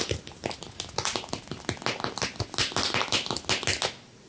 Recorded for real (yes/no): yes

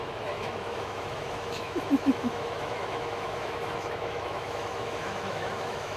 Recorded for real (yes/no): no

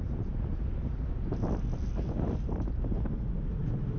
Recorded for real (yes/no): yes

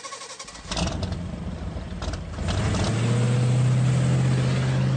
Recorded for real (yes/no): yes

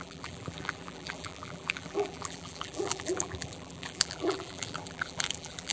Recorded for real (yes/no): no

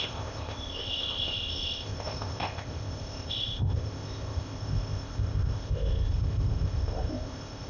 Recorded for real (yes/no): no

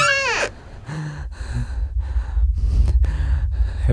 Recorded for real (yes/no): yes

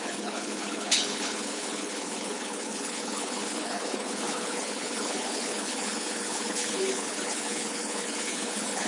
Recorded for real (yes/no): no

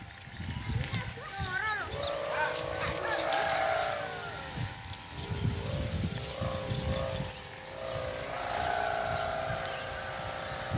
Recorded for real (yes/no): yes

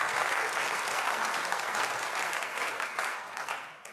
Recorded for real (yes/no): no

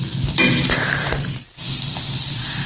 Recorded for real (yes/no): yes